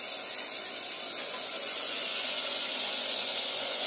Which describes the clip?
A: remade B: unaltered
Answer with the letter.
A